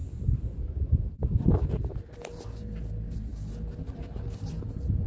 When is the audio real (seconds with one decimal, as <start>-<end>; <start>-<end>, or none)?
0.0-5.1